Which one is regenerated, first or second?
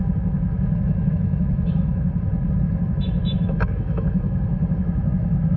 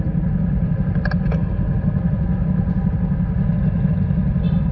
first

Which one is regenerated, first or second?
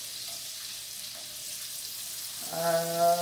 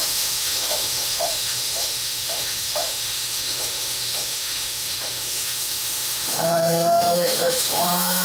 second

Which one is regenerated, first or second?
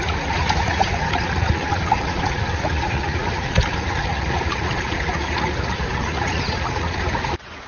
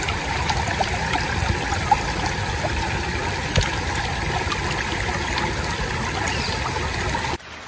first